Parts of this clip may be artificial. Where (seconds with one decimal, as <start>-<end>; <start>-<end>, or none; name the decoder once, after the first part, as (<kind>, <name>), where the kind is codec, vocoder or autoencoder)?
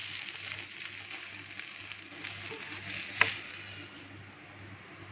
none